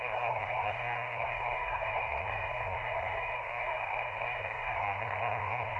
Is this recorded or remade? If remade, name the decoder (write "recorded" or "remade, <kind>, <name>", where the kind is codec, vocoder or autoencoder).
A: remade, codec, SNAC